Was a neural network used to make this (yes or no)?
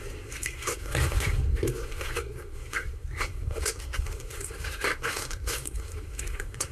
yes